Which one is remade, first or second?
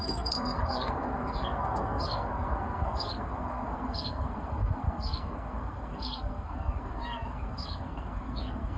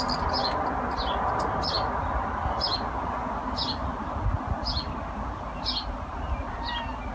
first